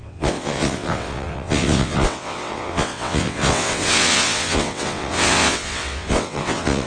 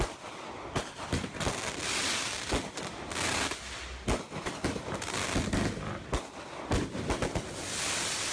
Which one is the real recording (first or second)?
second